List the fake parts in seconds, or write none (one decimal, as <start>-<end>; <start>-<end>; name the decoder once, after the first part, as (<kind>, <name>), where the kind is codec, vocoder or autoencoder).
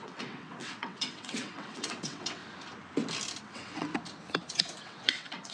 0.0-2.4 (vocoder, WaveNeXt); 3.4-3.9; 4.8-5.5